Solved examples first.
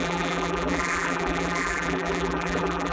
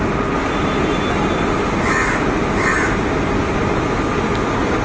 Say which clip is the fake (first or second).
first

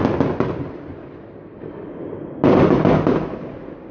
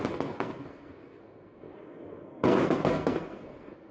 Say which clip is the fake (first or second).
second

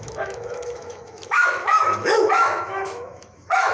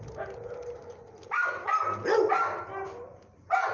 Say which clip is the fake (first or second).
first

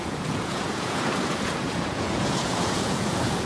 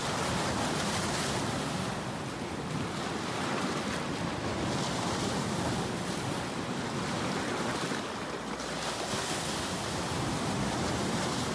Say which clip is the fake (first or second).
first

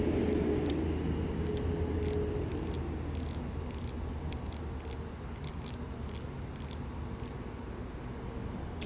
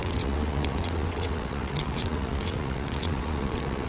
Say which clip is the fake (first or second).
second